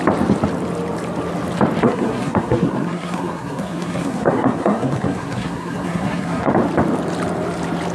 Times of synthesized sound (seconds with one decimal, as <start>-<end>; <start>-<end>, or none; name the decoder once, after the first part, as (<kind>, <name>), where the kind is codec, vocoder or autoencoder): 1.8-6.5 (codec, SNAC)